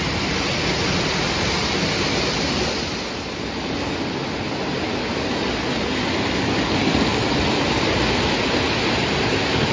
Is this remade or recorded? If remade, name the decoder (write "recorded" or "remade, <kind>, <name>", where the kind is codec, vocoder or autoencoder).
recorded